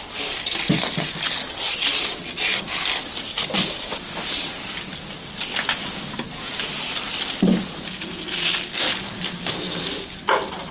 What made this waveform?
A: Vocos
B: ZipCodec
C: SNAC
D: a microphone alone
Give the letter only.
D